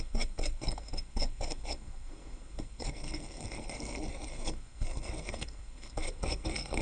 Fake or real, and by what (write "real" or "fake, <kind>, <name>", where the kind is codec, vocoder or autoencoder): fake, codec, SNAC